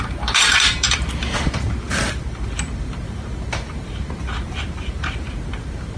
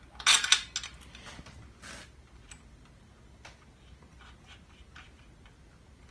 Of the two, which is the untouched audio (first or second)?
second